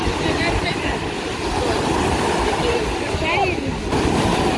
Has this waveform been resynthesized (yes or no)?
no